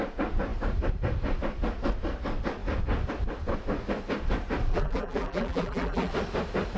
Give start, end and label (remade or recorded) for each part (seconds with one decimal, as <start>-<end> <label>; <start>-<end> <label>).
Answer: 0.0-4.7 recorded; 4.7-6.1 remade; 6.1-6.8 recorded